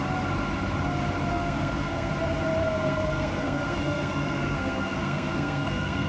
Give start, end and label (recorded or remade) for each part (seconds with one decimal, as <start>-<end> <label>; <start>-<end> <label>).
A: 0.0-1.3 recorded; 1.3-2.1 remade; 2.1-2.6 recorded; 2.6-6.1 remade